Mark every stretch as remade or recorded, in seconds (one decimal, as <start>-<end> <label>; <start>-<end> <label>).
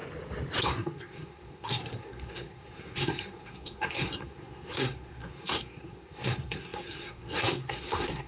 0.0-0.6 recorded; 0.6-8.3 remade